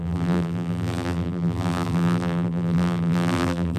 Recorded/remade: remade